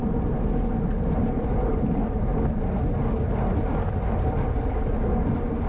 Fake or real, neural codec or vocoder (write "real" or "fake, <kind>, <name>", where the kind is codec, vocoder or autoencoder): real